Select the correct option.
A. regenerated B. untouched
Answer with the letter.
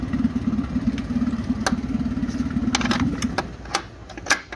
B